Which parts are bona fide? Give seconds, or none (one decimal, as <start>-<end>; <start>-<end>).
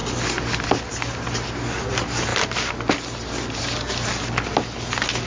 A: 0.0-5.3